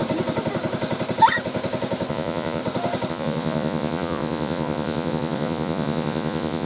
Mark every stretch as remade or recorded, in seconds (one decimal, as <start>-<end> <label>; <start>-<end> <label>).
0.0-2.1 recorded; 2.1-2.6 remade; 2.6-3.1 recorded; 3.1-6.7 remade